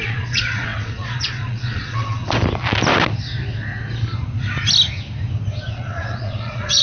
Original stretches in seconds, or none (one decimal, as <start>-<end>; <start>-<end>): 2.2-5.7